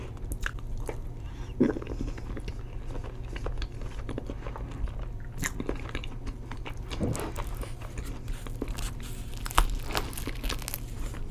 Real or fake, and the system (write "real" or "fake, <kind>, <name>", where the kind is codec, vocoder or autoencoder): real